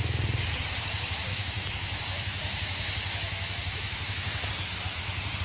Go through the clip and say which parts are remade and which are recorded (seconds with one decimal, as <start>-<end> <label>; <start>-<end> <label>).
0.0-1.3 recorded; 1.3-4.5 remade; 4.5-5.4 recorded